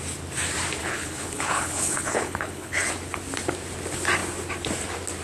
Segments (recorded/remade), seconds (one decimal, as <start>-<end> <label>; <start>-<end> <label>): 0.0-0.8 recorded; 0.8-2.9 remade; 2.9-5.2 recorded